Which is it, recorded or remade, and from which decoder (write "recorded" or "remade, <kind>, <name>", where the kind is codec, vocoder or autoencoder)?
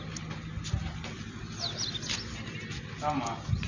recorded